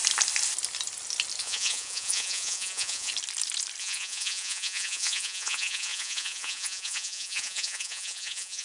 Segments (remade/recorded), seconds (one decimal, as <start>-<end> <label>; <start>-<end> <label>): 0.0-1.4 recorded; 1.4-3.1 remade; 3.1-3.8 recorded; 3.8-8.6 remade